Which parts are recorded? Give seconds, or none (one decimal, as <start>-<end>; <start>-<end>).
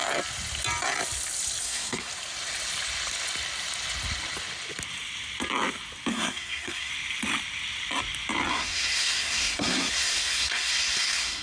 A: 0.0-1.6; 2.1-6.1; 6.9-8.5